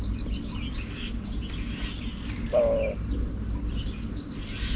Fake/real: real